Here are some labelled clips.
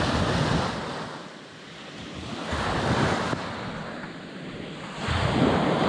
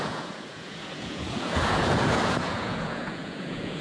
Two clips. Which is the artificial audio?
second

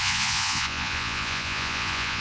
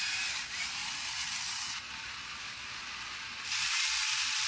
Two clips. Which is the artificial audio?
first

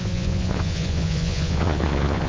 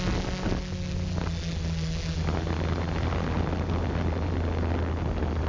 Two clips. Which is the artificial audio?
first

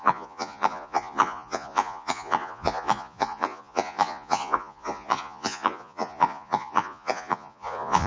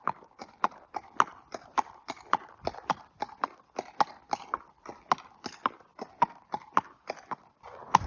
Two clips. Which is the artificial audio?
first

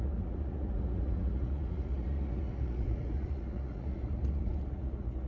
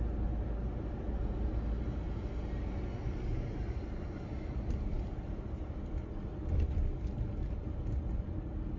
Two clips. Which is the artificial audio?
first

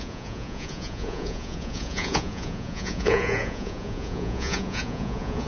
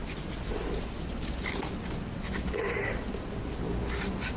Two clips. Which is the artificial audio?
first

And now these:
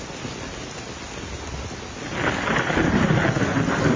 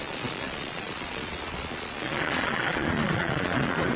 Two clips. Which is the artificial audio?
second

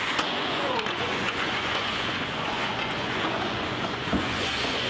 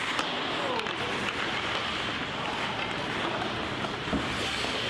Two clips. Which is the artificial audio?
first